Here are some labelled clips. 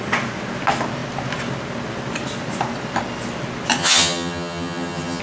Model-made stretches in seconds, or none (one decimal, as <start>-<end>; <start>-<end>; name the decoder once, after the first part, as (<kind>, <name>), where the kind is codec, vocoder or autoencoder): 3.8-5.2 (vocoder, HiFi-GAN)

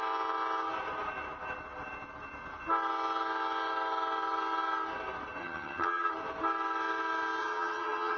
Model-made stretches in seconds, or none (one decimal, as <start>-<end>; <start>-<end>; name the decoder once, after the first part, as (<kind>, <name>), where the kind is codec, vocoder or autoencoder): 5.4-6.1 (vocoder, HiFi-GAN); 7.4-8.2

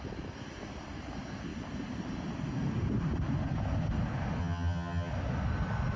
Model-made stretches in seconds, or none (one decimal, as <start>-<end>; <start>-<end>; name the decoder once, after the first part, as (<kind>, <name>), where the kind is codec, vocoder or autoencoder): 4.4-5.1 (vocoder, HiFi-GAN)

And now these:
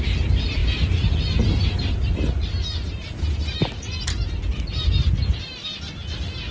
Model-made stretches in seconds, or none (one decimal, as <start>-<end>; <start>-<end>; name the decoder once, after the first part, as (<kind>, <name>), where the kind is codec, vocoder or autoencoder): none

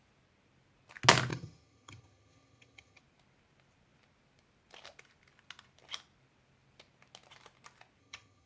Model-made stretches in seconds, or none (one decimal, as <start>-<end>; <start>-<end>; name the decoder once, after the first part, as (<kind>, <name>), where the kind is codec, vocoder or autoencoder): 1.3-3.0 (vocoder, HiFi-GAN); 8.0-8.5

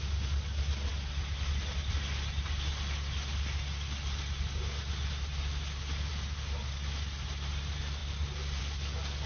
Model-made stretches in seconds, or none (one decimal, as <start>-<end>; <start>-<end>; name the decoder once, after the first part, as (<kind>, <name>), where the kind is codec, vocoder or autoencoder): none

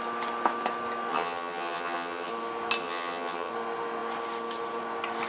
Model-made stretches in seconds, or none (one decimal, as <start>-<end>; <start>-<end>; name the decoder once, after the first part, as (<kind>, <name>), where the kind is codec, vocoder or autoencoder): 1.1-2.3 (vocoder, HiFi-GAN); 2.8-3.5